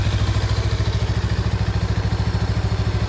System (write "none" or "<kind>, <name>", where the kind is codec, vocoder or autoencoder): none